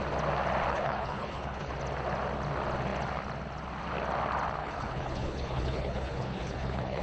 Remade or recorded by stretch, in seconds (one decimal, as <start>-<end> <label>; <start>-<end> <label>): 0.0-0.7 recorded; 0.7-1.7 remade; 1.7-4.6 recorded; 4.6-7.0 remade